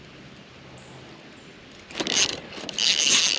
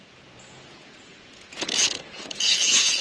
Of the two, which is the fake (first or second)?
second